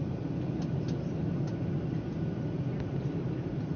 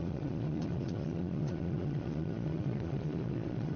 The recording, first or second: first